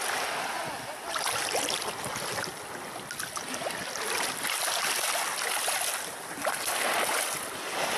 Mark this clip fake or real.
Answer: real